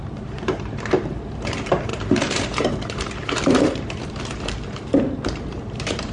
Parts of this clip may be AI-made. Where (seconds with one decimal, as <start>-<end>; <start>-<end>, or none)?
0.0-6.1